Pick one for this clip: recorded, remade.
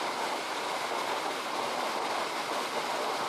recorded